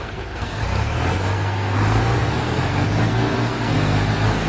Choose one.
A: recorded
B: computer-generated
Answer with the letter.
B